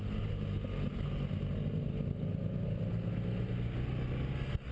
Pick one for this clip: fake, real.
real